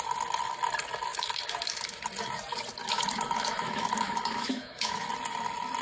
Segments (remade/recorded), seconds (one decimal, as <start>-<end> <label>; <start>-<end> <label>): 0.0-1.1 recorded; 1.1-2.0 remade; 2.0-2.8 recorded; 2.8-5.1 remade; 5.1-5.8 recorded